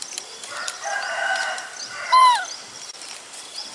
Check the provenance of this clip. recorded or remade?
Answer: remade